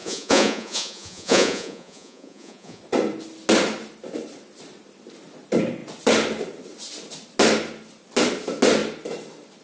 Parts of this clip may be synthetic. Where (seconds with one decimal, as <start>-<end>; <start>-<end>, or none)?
0.0-2.8